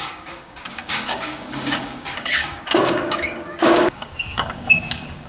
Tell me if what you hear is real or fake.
fake